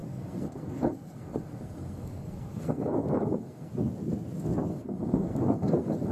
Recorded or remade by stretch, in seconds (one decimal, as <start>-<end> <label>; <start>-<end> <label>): 0.0-3.7 remade; 3.7-4.7 recorded; 4.7-6.1 remade